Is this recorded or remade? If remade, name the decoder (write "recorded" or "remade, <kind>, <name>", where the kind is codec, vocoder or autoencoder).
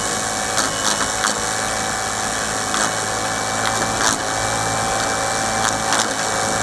recorded